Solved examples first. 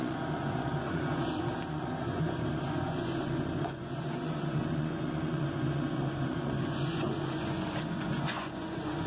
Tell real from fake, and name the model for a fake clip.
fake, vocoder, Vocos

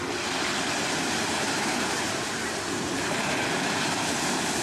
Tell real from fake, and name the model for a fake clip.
real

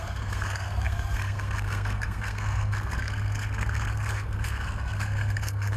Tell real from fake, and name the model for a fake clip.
fake, codec, SNAC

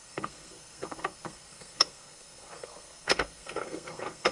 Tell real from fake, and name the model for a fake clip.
fake, codec, SNAC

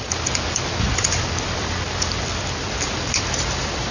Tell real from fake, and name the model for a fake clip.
real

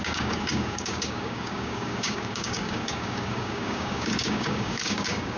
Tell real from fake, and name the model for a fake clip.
fake, codec, DAC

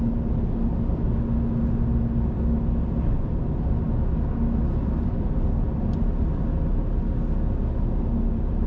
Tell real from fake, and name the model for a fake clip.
real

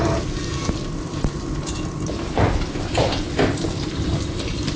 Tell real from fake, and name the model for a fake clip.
real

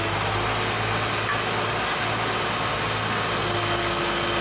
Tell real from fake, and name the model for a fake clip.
real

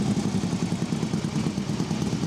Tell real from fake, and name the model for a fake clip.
real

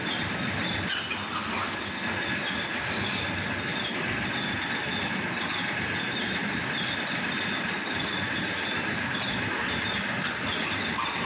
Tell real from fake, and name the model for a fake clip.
real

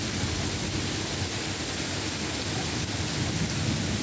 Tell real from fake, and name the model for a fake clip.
real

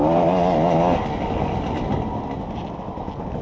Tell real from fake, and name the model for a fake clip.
real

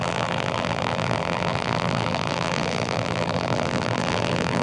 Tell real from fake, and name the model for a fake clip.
fake, vocoder, BigVGAN v2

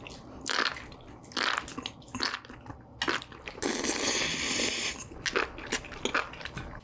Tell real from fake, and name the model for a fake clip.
real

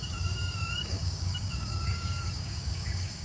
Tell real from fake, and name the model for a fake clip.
fake, codec, DAC